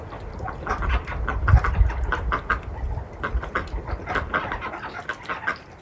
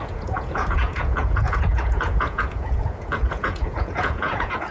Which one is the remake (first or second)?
second